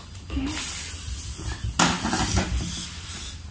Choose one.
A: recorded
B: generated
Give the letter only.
A